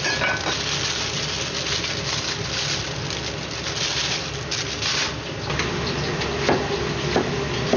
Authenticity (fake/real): real